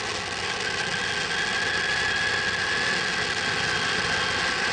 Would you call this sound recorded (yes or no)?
yes